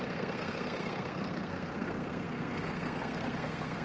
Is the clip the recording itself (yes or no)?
no